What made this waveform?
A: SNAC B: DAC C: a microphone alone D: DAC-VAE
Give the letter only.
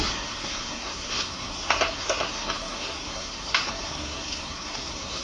A